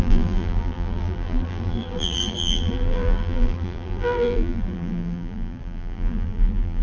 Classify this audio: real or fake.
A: fake